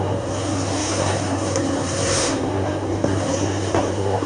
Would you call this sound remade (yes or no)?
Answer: yes